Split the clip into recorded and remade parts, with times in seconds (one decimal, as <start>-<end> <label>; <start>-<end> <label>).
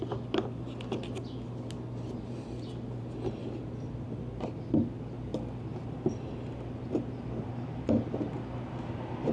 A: 0.0-7.5 recorded; 7.5-8.0 remade; 8.0-9.3 recorded